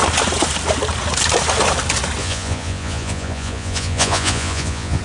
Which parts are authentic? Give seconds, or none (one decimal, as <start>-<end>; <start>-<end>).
0.0-2.2